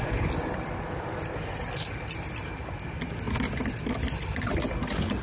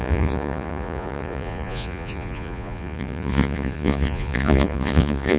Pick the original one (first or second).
first